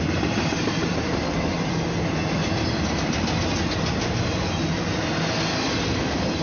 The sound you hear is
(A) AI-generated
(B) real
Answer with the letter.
B